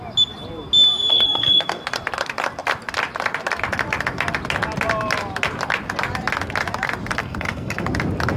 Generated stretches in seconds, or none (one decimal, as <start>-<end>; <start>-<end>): 1.1-1.8; 7.2-7.9